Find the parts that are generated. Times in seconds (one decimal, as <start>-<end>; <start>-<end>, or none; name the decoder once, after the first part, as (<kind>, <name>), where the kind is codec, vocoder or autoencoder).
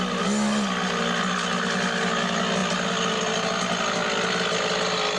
none